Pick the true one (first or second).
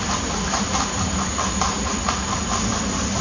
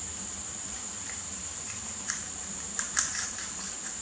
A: first